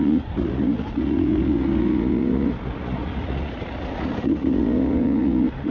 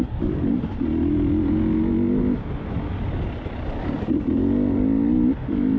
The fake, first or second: first